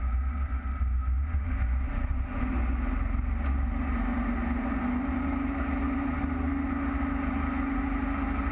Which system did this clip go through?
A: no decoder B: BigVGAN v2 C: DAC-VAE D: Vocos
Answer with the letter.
A